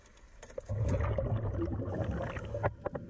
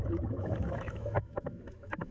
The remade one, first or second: second